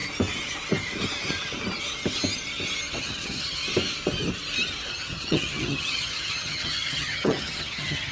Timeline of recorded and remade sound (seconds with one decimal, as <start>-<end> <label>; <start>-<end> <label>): 0.0-3.0 recorded; 3.0-3.6 remade; 3.6-4.9 recorded; 4.9-8.1 remade